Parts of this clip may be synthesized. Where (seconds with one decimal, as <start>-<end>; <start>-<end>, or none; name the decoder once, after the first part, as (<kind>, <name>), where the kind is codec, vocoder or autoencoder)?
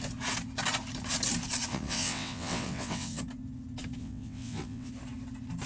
1.7-3.2 (vocoder, WaveNeXt); 4.0-4.9